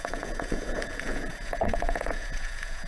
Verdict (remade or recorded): remade